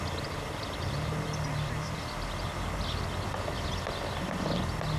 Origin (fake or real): real